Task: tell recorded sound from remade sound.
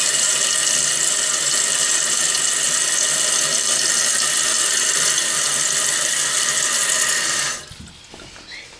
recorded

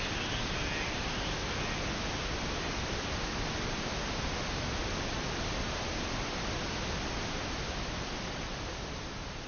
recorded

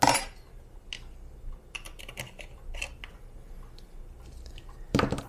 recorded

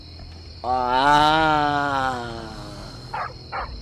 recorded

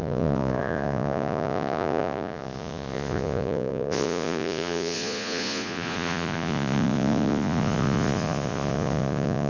remade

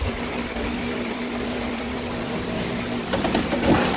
remade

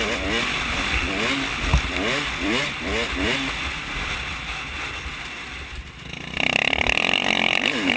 recorded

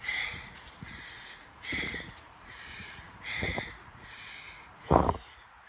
remade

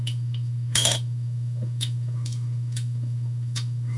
remade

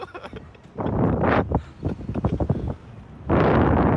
recorded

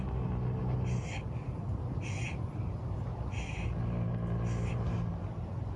recorded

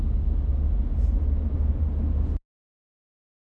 recorded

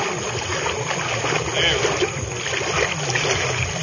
recorded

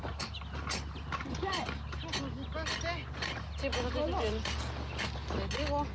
recorded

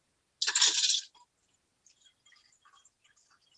recorded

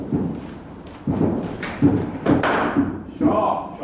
remade